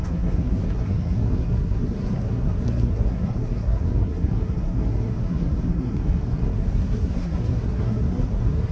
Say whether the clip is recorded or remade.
remade